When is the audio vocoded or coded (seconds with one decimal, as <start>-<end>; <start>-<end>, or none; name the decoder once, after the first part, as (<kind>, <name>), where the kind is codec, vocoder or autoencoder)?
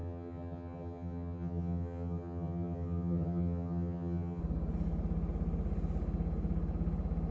0.0-4.4 (vocoder, HiFi-GAN)